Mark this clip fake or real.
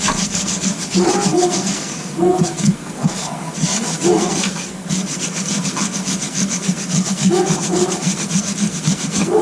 fake